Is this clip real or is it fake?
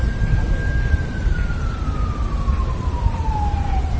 fake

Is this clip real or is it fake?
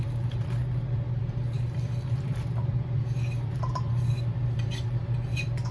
fake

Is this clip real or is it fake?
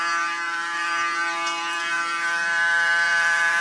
fake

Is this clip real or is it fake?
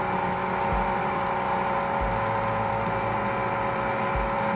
real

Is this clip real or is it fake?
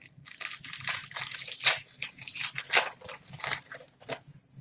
real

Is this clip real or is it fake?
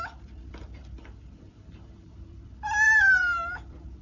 fake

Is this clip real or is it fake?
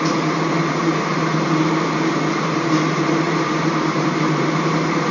fake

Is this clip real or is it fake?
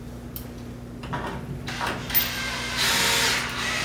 real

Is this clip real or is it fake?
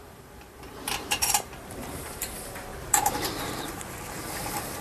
fake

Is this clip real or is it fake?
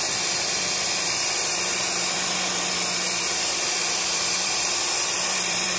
fake